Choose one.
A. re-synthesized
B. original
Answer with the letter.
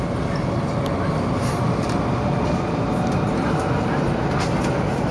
B